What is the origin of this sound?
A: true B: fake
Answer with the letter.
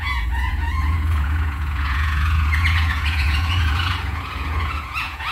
B